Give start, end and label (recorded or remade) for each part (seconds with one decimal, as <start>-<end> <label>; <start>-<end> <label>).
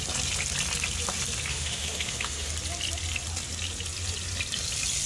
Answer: 0.0-1.5 recorded; 1.5-2.5 remade; 2.5-5.1 recorded